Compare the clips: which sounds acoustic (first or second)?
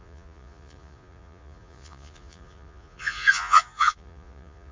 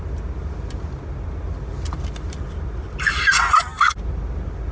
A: second